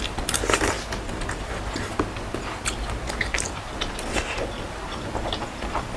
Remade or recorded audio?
recorded